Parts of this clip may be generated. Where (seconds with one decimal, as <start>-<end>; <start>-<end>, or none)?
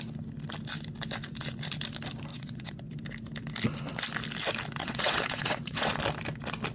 2.3-2.9; 4.8-5.9